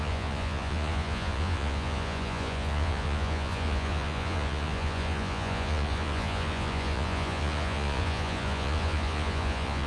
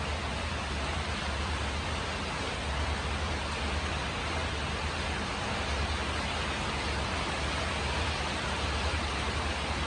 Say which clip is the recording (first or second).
second